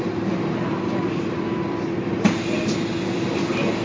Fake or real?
real